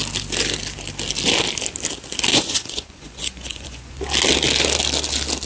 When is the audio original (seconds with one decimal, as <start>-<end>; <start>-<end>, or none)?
0.0-2.3; 4.0-5.5